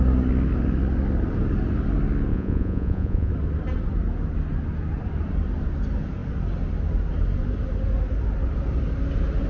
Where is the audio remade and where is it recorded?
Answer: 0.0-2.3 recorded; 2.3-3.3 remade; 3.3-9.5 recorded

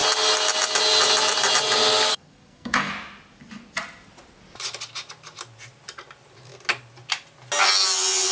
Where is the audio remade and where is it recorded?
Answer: 0.0-2.1 recorded; 2.1-2.9 remade; 2.9-8.3 recorded